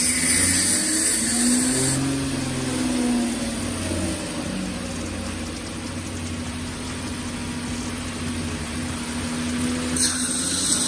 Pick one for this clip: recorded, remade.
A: recorded